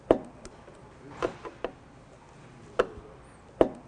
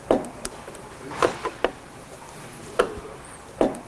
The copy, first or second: second